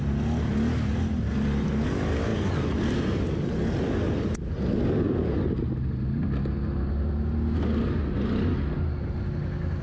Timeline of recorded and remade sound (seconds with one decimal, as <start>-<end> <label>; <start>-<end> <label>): 0.0-9.8 recorded